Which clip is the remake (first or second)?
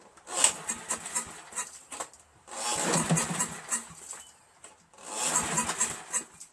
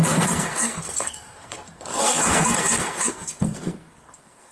second